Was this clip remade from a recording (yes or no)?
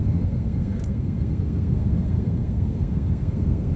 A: yes